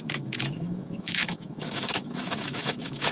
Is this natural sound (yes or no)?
no